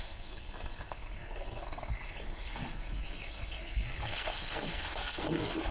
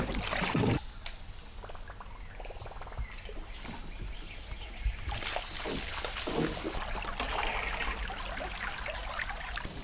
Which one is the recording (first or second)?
second